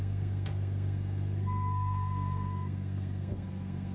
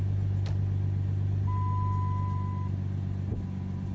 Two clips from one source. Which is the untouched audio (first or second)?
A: second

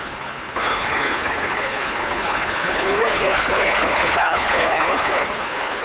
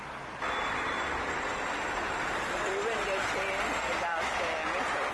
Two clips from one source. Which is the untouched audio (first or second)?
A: second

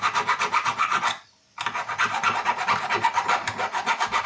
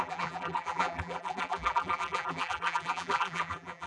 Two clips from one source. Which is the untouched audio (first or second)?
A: first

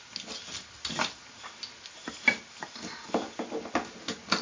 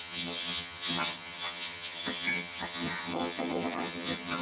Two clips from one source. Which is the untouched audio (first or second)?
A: first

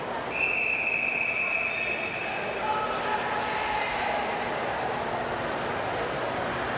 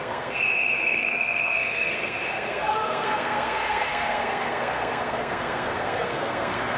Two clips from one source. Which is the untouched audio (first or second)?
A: first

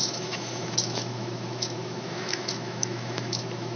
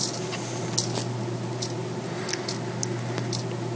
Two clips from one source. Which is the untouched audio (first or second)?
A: second